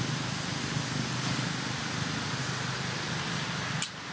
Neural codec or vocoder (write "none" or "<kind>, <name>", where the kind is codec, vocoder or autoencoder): none